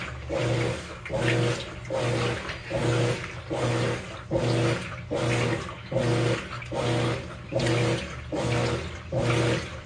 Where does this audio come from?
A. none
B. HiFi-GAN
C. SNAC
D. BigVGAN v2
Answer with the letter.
A